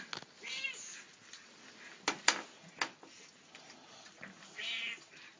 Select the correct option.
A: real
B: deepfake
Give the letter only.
A